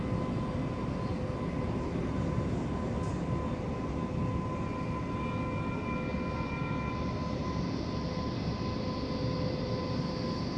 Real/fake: real